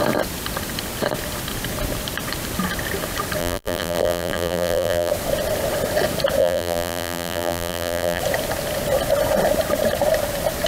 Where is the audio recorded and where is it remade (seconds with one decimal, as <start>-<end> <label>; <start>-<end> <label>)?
0.0-3.4 recorded; 3.4-5.1 remade; 5.1-6.4 recorded; 6.4-8.2 remade; 8.2-10.7 recorded